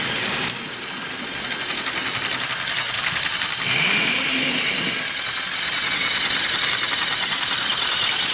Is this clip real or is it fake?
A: real